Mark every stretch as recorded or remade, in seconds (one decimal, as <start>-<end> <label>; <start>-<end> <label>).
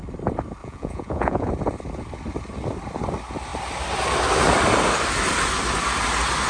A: 0.0-0.6 recorded; 0.6-1.5 remade; 1.5-6.5 recorded